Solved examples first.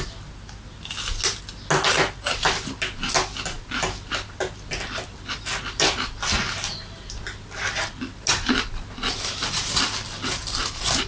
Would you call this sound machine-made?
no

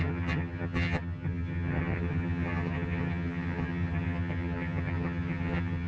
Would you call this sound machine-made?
yes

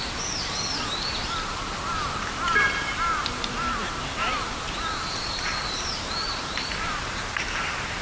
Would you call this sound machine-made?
yes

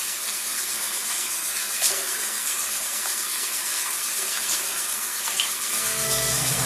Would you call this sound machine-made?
yes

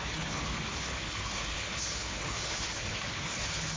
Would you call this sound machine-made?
yes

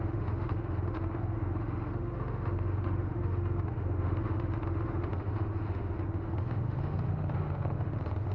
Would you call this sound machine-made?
yes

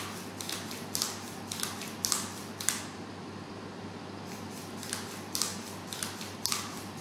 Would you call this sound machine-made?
no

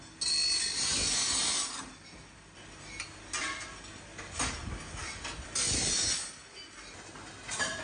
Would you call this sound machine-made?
no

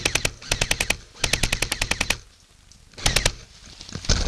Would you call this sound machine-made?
no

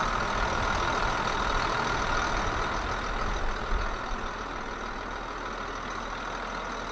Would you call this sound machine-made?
no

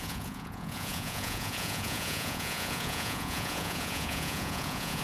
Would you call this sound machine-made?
yes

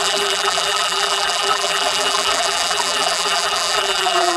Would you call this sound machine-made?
yes